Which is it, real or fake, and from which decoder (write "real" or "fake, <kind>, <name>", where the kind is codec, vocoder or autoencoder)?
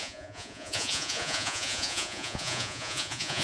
fake, vocoder, Vocos